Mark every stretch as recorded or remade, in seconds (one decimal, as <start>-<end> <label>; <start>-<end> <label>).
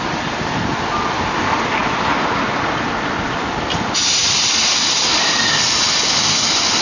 0.0-0.6 remade; 0.6-6.8 recorded